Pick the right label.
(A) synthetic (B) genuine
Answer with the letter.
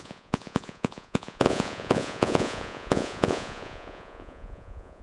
A